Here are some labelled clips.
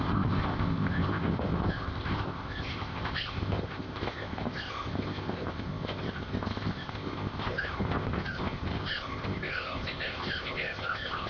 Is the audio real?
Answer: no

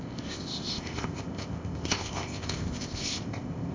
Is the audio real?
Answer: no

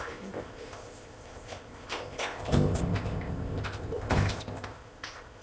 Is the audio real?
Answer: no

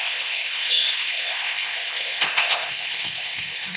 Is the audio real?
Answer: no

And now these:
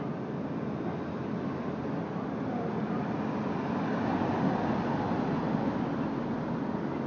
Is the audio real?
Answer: yes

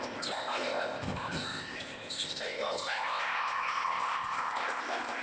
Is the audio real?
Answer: no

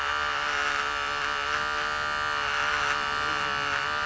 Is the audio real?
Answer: yes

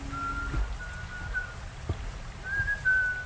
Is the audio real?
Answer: yes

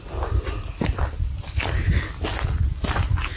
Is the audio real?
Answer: yes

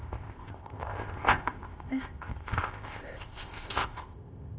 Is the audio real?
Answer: no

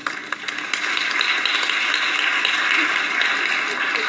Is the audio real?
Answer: yes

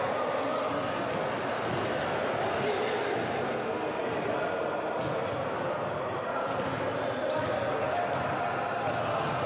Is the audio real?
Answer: yes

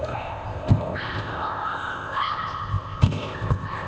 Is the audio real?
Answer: no